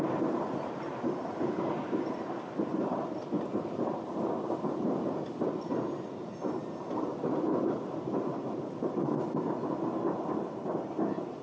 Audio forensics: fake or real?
real